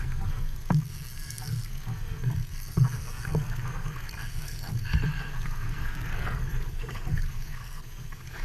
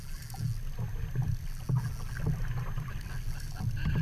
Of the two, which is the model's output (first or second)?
first